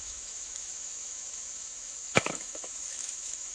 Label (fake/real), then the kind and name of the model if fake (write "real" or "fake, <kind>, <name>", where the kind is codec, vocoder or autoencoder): fake, autoencoder, DAC-VAE